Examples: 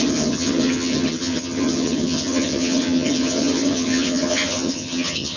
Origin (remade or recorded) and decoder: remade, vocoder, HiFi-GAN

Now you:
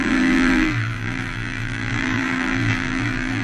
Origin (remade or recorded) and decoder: remade, vocoder, BigVGAN v2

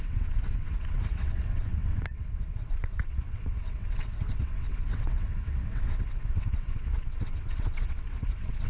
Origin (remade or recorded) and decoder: remade, vocoder, WaveNeXt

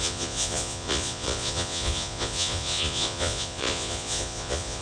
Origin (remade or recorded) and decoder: remade, vocoder, Vocos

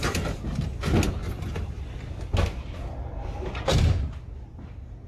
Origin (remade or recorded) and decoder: recorded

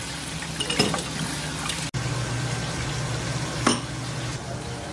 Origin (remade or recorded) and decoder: recorded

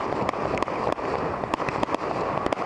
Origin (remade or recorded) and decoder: recorded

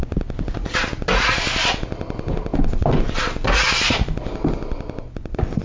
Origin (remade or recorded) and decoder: recorded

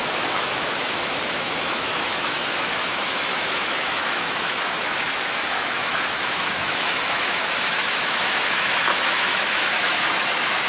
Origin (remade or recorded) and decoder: remade, autoencoder, DAC-VAE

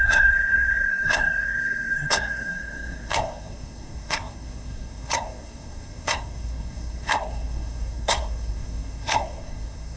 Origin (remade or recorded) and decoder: remade, codec, SNAC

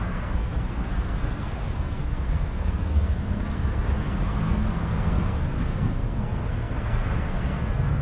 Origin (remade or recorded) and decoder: remade, codec, SNAC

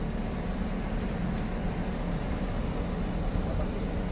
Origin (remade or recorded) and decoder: recorded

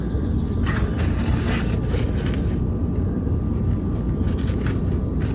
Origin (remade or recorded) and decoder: recorded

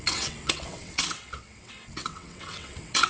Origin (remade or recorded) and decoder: remade, vocoder, WaveNeXt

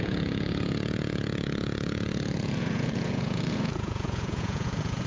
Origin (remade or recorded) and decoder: remade, vocoder, Vocos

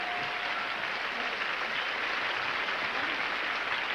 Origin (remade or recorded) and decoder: recorded